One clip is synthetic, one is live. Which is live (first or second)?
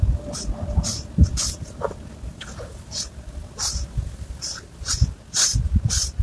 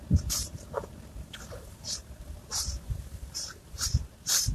first